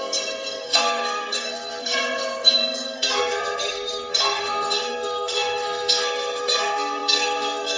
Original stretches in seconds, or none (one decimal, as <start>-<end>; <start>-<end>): none